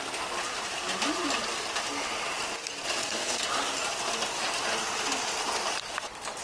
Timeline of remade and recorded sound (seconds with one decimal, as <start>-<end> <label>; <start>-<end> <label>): 0.0-3.0 recorded; 3.0-3.5 remade; 3.5-6.4 recorded